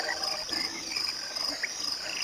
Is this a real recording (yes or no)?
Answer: yes